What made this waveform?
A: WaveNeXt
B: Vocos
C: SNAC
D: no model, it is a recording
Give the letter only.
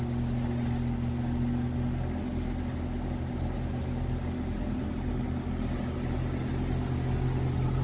D